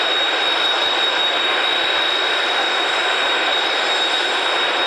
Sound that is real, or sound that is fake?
real